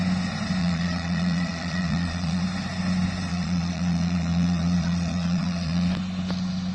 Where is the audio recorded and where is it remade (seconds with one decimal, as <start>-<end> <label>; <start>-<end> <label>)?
0.0-0.6 recorded; 0.6-2.4 remade; 2.4-3.3 recorded; 3.3-5.9 remade; 5.9-6.7 recorded